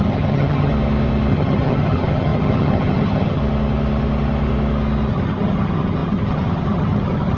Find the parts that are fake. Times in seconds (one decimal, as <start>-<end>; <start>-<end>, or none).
0.0-0.7; 1.3-3.4; 5.1-7.4